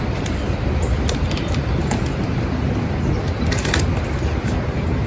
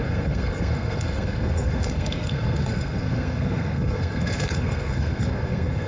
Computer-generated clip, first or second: second